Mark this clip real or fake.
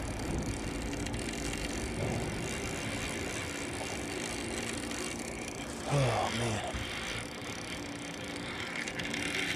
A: real